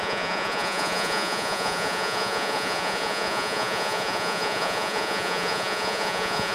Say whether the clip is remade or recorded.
remade